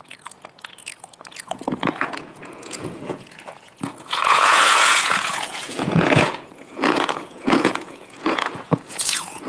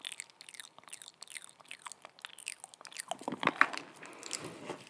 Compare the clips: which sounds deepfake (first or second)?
first